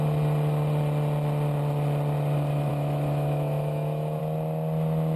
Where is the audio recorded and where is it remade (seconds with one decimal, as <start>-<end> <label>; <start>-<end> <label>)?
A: 0.0-2.7 recorded; 2.7-4.2 remade; 4.2-5.2 recorded